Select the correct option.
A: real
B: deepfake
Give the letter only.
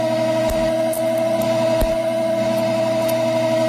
A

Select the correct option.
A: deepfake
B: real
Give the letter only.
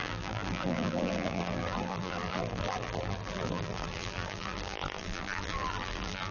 A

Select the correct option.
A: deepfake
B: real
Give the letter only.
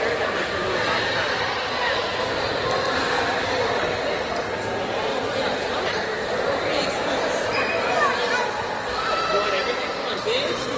A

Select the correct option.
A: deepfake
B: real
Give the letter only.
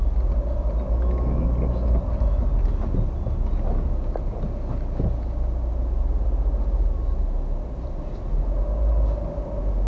B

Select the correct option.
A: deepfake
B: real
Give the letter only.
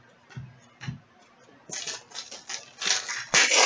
B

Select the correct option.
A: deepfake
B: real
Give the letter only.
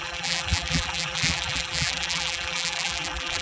A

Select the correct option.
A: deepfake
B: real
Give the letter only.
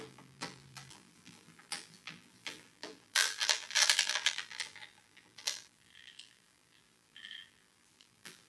A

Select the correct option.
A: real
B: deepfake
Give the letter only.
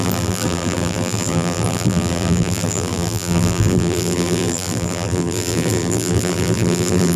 B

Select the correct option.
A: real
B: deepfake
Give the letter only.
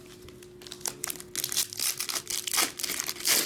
A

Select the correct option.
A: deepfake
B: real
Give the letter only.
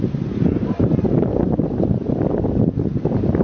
A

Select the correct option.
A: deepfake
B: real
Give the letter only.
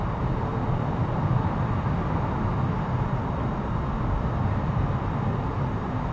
A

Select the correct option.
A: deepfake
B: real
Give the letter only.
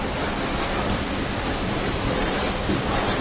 A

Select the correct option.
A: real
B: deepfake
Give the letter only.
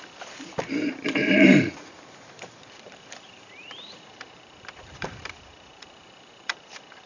B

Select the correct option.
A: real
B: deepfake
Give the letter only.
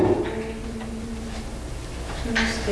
A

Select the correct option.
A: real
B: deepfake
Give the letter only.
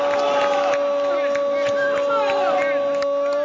A